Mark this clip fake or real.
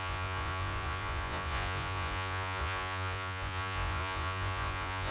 fake